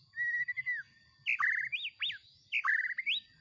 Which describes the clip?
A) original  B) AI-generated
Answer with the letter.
A